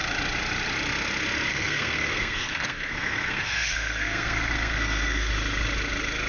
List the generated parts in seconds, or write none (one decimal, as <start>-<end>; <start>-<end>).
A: 1.5-5.3